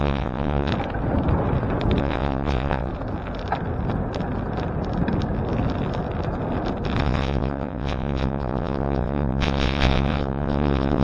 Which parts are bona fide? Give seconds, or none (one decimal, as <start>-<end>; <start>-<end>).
0.7-2.0; 2.9-7.0